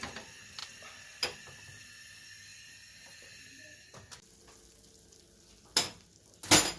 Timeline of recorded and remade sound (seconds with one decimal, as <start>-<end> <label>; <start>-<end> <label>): 0.0-6.8 recorded